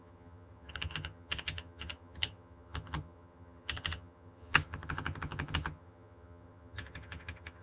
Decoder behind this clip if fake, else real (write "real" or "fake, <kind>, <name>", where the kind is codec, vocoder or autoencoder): fake, vocoder, HiFi-GAN